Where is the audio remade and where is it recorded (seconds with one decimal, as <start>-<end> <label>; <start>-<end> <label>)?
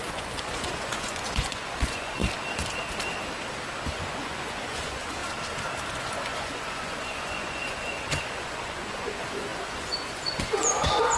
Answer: 0.0-2.2 remade; 2.2-3.9 recorded; 3.9-5.2 remade; 5.2-6.0 recorded; 6.0-11.2 remade